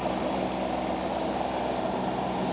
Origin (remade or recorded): recorded